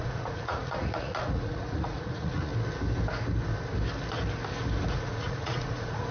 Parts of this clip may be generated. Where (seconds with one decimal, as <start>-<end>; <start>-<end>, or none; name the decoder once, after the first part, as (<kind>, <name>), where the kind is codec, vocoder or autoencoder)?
0.0-2.5 (vocoder, Vocos); 4.9-6.1

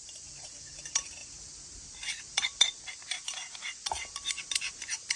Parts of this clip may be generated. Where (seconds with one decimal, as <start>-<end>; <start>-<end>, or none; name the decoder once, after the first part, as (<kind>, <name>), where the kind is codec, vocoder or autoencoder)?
none

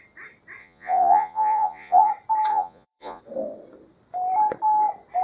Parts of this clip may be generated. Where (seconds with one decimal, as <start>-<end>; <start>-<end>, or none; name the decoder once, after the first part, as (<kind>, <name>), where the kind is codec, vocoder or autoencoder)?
0.6-2.1 (vocoder, Vocos); 2.5-3.2